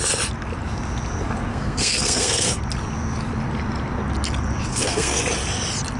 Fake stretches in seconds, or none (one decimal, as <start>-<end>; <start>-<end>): 1.5-2.6; 4.7-5.2